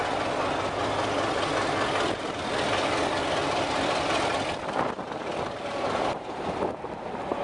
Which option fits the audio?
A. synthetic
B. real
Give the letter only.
B